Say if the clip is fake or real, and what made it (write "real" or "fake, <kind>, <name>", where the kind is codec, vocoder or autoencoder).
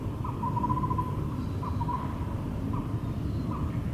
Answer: real